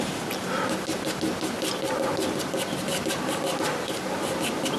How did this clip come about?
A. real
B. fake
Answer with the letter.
A